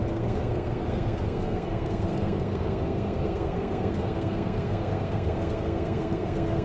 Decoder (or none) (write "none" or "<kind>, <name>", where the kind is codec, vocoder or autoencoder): codec, SNAC